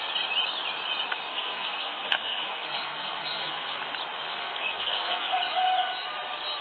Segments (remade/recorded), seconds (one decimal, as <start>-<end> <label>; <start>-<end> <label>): 0.0-1.3 recorded; 1.3-3.8 remade; 3.8-4.4 recorded; 4.4-5.3 remade; 5.3-6.6 recorded

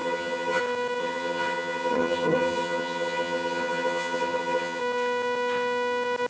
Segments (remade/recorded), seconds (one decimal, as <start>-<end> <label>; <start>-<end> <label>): 0.0-0.6 remade; 0.6-1.0 recorded; 1.0-4.8 remade; 4.8-6.3 recorded

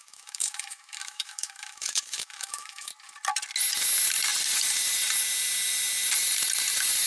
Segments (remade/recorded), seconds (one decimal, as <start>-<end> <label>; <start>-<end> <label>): 0.0-2.9 remade; 2.9-7.1 recorded

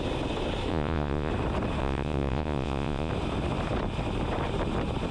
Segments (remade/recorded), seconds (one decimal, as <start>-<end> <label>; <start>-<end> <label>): 0.0-0.7 recorded; 0.7-1.3 remade; 1.3-1.8 recorded; 1.8-3.1 remade; 3.1-5.1 recorded

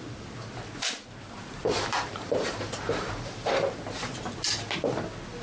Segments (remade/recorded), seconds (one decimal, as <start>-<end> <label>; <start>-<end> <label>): 0.0-1.6 recorded; 1.6-3.1 remade; 3.1-5.4 recorded

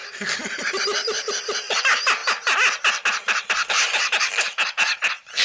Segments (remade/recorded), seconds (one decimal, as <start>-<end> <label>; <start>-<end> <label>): 0.0-0.8 remade; 0.8-5.4 recorded